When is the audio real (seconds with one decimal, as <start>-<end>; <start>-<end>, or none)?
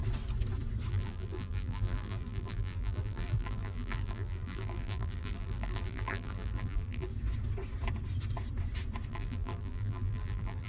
0.0-0.9; 7.1-9.1